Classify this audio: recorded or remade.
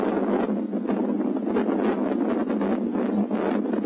recorded